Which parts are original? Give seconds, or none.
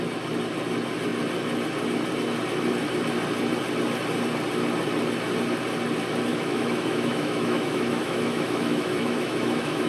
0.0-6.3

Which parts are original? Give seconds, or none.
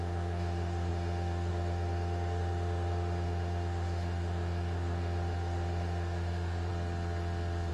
6.7-7.7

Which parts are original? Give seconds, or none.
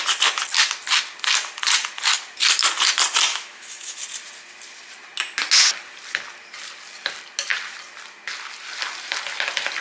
0.0-3.3; 4.0-9.8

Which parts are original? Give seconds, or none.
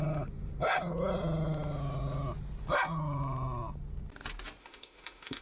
0.0-4.6